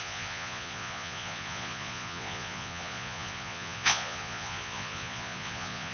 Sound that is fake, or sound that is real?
fake